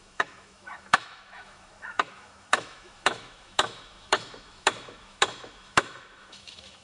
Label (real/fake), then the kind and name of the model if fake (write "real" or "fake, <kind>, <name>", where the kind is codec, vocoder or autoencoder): fake, autoencoder, DAC-VAE